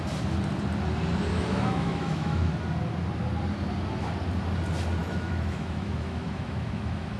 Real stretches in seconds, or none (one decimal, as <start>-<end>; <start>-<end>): 0.0-1.3; 2.5-5.0